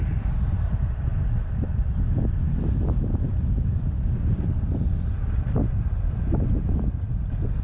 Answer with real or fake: fake